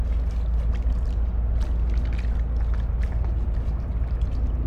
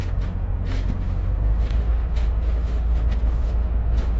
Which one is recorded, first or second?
first